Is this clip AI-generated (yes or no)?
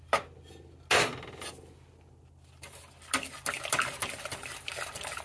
no